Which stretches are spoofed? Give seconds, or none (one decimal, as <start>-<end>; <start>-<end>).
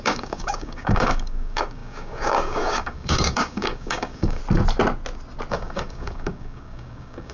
0.0-4.4; 5.5-7.3